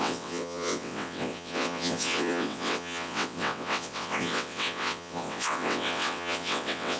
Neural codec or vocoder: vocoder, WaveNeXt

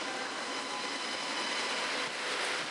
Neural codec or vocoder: none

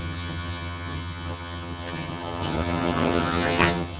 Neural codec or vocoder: vocoder, HiFi-GAN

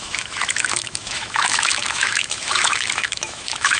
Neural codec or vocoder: autoencoder, DAC-VAE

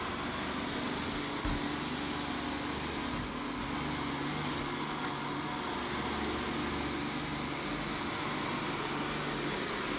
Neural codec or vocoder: none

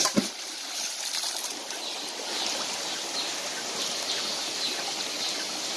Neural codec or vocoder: none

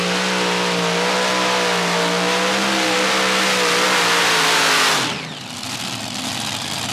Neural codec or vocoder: none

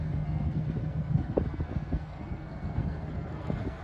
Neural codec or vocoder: codec, SNAC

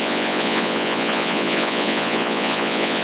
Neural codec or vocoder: vocoder, Vocos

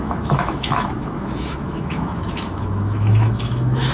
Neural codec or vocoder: autoencoder, DAC-VAE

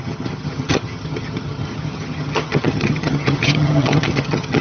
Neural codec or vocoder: vocoder, HiFi-GAN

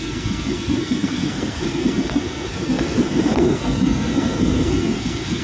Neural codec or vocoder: codec, SNAC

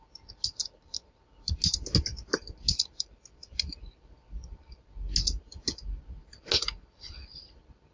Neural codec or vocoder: none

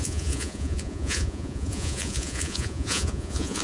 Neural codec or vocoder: vocoder, Vocos